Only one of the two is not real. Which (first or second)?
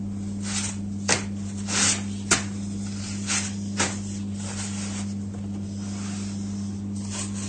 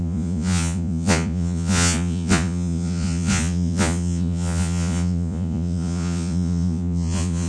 second